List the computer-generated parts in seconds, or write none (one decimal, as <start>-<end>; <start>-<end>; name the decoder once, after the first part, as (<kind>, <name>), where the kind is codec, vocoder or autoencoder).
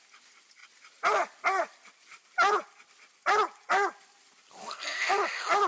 4.6-5.1 (codec, SNAC)